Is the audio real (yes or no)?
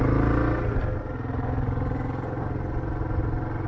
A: yes